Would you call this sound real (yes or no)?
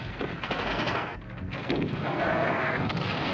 no